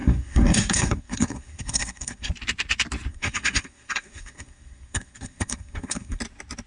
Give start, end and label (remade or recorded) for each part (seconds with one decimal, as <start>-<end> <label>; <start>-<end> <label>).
0.0-2.3 remade; 2.3-3.1 recorded; 3.1-6.2 remade; 6.2-6.7 recorded